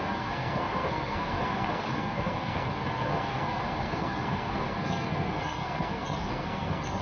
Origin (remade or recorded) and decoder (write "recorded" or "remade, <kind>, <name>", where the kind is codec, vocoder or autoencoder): remade, codec, SNAC